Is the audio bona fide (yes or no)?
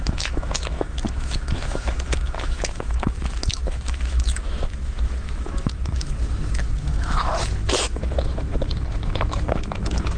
no